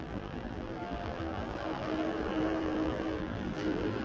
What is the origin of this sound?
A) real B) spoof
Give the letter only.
B